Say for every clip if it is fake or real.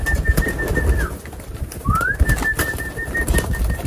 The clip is real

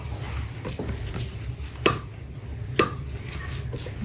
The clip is real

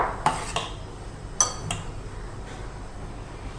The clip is real